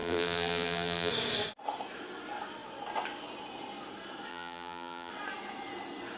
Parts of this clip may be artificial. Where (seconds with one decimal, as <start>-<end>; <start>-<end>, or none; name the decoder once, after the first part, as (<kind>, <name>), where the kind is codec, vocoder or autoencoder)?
0.0-1.1 (vocoder, BigVGAN v2); 4.3-5.1